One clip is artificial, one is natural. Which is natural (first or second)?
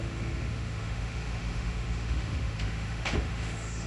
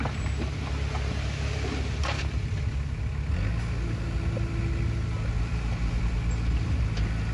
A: second